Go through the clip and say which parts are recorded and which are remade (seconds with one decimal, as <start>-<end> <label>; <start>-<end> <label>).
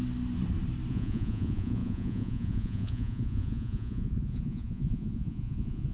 0.0-0.9 recorded; 0.9-5.9 remade